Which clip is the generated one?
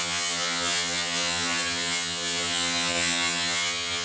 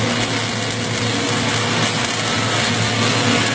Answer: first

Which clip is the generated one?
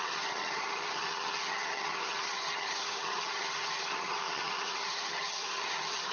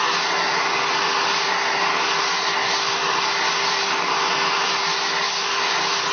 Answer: first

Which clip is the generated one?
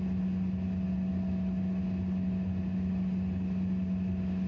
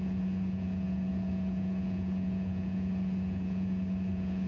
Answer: second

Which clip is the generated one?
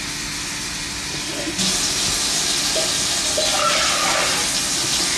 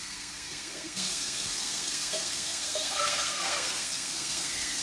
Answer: second